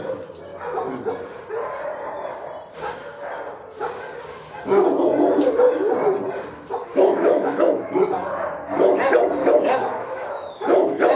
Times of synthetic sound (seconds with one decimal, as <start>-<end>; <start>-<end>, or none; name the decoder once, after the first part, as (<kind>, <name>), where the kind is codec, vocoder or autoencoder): 6.9-7.9 (autoencoder, DAC-VAE); 9.4-11.2